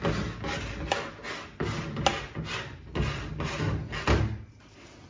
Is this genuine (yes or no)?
yes